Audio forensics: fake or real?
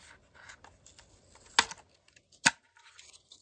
real